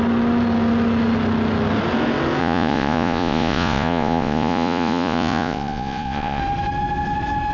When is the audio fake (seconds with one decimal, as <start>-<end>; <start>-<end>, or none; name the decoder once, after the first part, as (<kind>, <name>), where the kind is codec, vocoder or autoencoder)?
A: 2.4-6.4 (vocoder, Vocos)